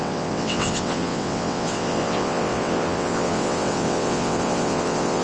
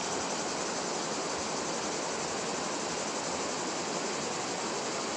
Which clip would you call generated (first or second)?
first